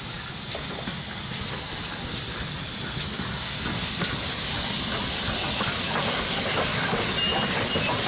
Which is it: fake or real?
real